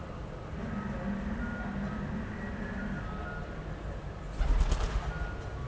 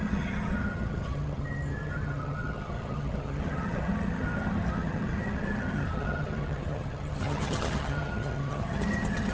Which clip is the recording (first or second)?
first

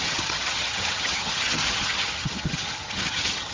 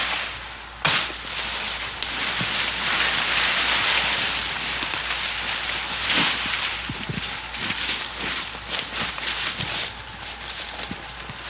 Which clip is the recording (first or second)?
second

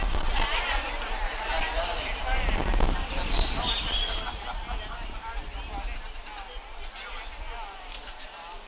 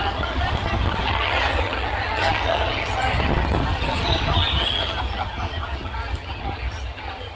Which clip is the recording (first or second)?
first